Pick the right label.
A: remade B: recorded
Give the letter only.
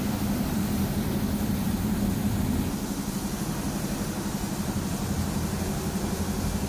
B